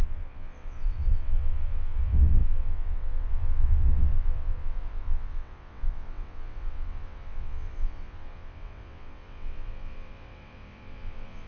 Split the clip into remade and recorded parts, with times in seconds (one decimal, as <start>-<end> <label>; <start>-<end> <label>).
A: 0.0-11.5 remade